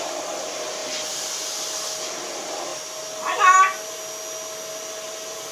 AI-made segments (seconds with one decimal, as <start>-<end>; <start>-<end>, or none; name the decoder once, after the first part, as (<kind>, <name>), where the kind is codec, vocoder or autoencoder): none